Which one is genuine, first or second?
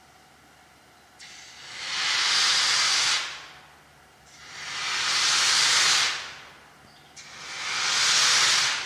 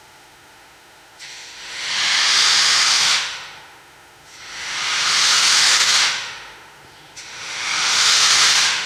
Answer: first